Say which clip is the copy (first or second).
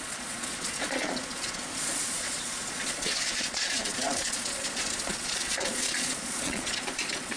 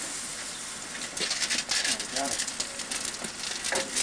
first